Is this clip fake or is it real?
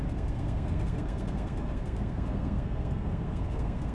fake